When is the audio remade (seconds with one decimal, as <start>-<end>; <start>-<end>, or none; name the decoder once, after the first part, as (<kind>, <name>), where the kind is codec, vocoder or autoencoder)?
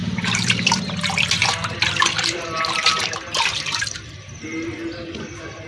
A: 0.0-0.8 (vocoder, BigVGAN v2); 1.4-4.7